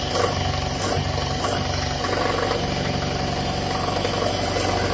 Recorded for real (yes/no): yes